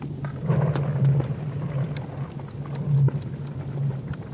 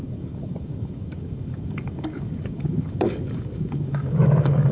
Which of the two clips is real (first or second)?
first